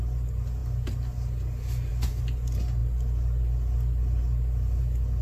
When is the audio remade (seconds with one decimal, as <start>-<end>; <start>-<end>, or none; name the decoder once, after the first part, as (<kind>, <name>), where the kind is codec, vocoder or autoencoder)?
none